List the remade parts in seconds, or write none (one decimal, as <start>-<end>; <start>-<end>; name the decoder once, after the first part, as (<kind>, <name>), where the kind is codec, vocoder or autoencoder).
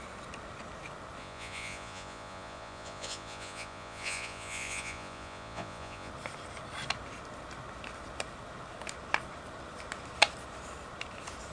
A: 1.2-6.1 (vocoder, Vocos)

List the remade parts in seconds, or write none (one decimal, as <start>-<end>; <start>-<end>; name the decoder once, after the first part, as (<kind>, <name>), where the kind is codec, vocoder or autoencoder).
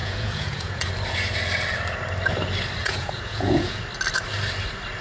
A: 0.0-0.9 (vocoder, Vocos); 2.8-3.8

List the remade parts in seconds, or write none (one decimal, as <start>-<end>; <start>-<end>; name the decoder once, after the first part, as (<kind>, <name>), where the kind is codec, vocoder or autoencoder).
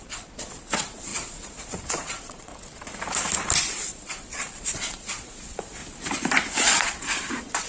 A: 0.0-2.5 (vocoder, Vocos); 3.6-5.8; 6.6-7.7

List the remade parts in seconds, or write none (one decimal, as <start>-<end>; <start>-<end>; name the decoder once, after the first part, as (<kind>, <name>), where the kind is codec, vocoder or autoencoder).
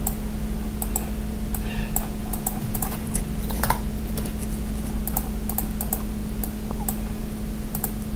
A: 2.2-3.2 (vocoder, Vocos)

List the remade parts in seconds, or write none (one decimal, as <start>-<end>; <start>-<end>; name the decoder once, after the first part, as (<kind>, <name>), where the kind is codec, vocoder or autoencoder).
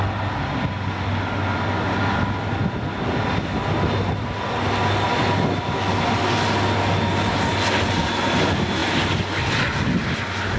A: none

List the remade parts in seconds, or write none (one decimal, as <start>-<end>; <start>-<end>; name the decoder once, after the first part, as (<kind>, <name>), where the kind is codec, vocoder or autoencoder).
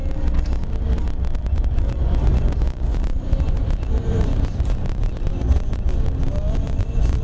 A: 1.4-5.9 (vocoder, Vocos); 6.5-7.2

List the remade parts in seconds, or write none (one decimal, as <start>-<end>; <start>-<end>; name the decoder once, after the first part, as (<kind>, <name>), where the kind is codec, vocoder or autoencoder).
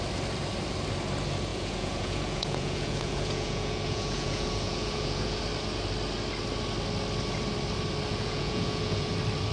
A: 1.5-5.4 (vocoder, Vocos); 8.1-9.1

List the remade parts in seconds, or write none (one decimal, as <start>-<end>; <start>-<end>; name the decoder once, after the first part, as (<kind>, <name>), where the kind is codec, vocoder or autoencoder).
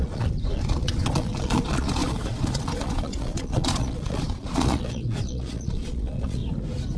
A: 0.0-6.4 (vocoder, Vocos)